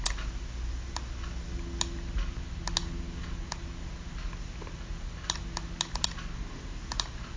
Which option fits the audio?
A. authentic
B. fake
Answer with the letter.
A